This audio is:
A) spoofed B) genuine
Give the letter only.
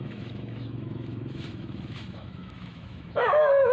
A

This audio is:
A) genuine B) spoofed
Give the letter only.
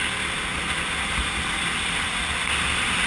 A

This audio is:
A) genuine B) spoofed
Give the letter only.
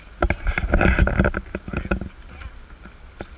A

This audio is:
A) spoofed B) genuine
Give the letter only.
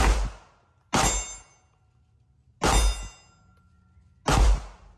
B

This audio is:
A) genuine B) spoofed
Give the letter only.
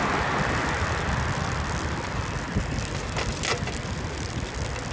A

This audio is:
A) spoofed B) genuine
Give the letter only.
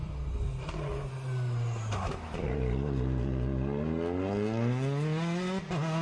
B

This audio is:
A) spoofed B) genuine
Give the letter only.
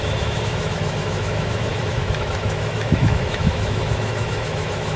A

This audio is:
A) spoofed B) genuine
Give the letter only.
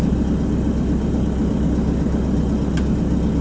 B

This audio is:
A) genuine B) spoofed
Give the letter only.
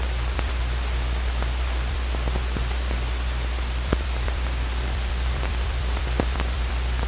B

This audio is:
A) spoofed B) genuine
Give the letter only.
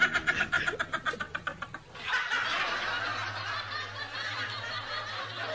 B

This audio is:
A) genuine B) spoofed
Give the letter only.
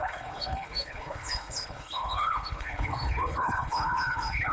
B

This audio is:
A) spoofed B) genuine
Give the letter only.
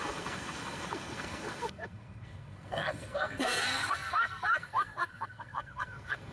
A